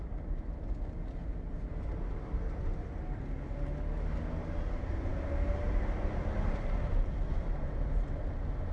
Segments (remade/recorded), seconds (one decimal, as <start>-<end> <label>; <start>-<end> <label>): 0.0-8.7 recorded